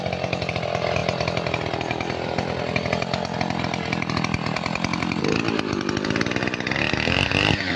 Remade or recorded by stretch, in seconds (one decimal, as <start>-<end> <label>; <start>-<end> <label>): 0.0-7.8 recorded

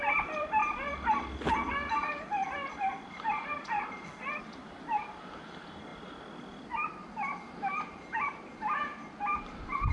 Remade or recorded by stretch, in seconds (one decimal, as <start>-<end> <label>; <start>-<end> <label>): 0.0-9.9 recorded

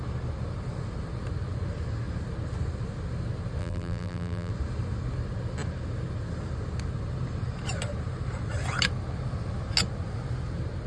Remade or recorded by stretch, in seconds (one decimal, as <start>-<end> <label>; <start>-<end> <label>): 0.0-3.6 recorded; 3.6-4.5 remade; 4.5-10.9 recorded